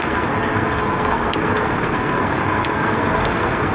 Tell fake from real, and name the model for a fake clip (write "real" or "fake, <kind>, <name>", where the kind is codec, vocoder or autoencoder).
fake, codec, SNAC